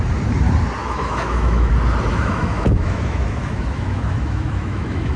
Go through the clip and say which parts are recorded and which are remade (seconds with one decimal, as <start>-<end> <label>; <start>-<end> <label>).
0.0-0.8 recorded; 0.8-1.7 remade; 1.7-2.1 recorded; 2.1-5.2 remade